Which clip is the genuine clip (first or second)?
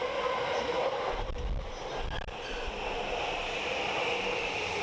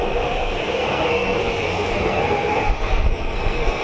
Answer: first